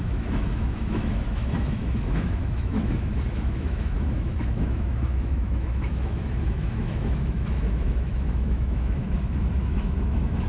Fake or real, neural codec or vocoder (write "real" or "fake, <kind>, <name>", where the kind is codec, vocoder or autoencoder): fake, autoencoder, DAC-VAE